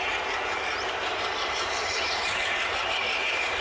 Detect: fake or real fake